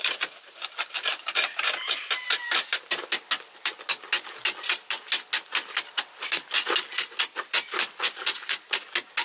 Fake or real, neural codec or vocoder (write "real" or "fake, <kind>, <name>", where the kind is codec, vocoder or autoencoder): real